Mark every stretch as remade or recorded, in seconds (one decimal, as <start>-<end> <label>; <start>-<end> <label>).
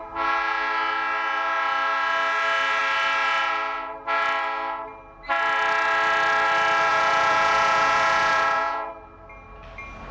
0.0-6.9 recorded; 6.9-8.9 remade; 8.9-10.1 recorded